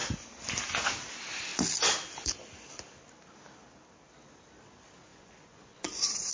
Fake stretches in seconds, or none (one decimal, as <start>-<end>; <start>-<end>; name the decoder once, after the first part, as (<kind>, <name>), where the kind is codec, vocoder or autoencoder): 5.1-6.3 (vocoder, Vocos)